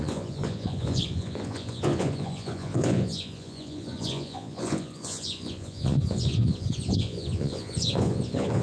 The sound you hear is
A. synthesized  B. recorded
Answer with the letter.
A